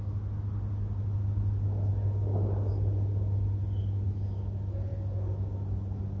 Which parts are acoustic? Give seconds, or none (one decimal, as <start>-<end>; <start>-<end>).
0.0-6.2